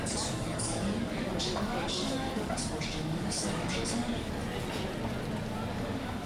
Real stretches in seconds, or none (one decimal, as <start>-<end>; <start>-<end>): 4.4-5.7